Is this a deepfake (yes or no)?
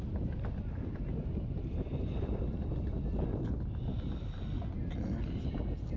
no